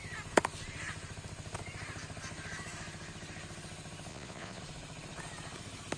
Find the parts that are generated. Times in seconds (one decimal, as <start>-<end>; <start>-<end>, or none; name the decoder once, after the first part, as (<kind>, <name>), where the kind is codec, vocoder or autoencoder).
4.1-4.6 (vocoder, Vocos)